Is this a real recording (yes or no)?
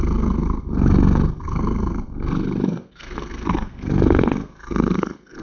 no